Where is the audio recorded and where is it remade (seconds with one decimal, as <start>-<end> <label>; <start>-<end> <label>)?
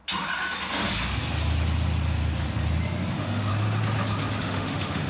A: 0.0-3.1 recorded; 3.1-3.5 remade; 3.5-4.4 recorded; 4.4-5.1 remade